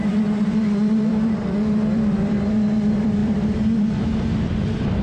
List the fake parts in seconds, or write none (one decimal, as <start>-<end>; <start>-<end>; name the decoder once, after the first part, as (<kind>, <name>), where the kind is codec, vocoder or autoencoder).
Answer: 0.0-5.0 (vocoder, BigVGAN v2)